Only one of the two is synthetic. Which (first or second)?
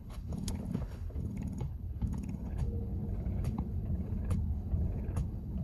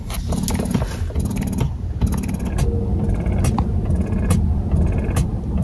first